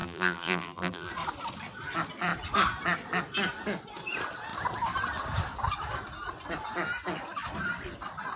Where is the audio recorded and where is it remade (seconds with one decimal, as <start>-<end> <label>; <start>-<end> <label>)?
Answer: 0.0-1.1 remade; 1.1-8.4 recorded